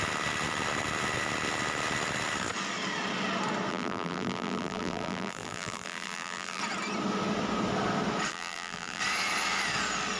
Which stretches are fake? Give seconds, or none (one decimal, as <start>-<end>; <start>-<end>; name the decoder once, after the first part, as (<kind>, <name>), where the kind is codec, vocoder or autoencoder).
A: 3.7-6.6 (vocoder, BigVGAN v2); 8.3-9.0